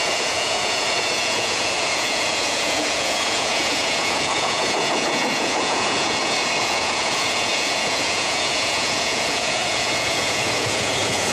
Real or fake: fake